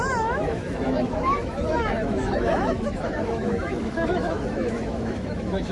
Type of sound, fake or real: fake